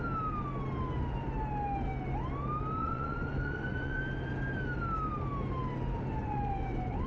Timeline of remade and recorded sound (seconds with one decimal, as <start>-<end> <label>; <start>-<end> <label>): 0.0-2.8 recorded; 2.8-4.0 remade; 4.0-6.2 recorded; 6.2-7.1 remade